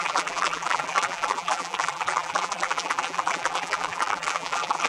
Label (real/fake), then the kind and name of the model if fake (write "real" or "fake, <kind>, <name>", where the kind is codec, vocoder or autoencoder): fake, vocoder, BigVGAN v2